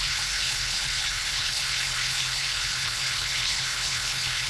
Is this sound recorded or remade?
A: remade